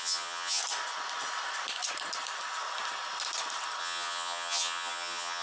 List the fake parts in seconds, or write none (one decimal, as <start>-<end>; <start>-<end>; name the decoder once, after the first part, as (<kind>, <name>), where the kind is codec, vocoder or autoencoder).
0.0-0.6 (vocoder, HiFi-GAN); 3.8-5.4